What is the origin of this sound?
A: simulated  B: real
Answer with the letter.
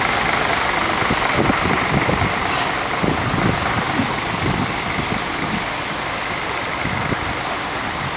B